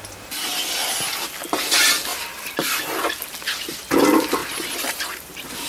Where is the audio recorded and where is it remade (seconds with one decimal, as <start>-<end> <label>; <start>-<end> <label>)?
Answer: 0.0-4.4 recorded; 4.4-5.7 remade